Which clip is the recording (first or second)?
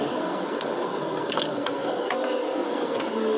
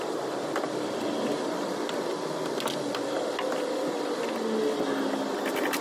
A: second